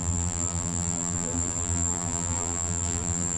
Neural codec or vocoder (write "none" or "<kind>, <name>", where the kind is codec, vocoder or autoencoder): vocoder, BigVGAN v2